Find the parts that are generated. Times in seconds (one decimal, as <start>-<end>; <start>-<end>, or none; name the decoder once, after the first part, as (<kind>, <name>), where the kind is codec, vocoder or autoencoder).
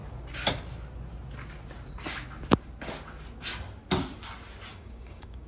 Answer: 4.7-5.5 (codec, DAC)